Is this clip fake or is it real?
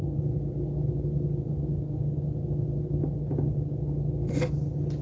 real